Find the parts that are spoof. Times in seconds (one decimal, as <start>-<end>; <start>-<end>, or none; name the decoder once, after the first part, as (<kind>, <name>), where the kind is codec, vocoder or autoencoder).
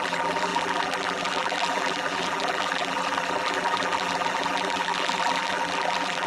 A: 0.0-6.3 (vocoder, BigVGAN v2)